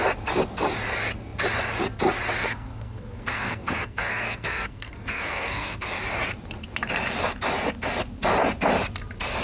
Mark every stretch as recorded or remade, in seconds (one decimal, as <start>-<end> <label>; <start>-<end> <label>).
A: 0.0-2.4 recorded; 2.4-5.8 remade; 5.8-9.4 recorded